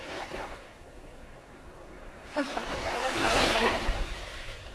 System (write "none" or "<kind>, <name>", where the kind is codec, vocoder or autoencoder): codec, SNAC